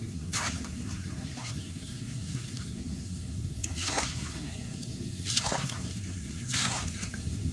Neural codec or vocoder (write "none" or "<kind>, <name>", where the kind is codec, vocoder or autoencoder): codec, SNAC